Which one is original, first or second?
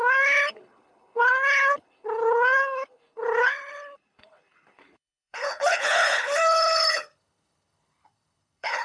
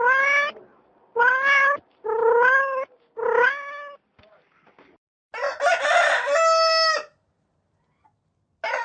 second